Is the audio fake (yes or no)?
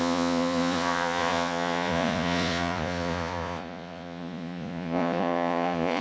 yes